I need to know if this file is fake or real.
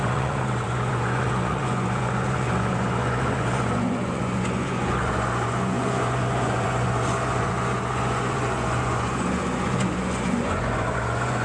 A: fake